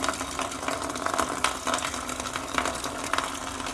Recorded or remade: recorded